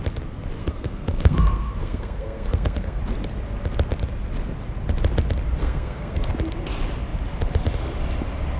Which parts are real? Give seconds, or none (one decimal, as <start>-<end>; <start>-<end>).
0.0-0.6; 3.0-5.6; 6.3-8.6